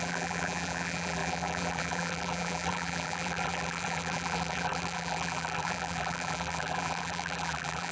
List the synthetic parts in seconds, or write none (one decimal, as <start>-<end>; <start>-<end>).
0.0-7.9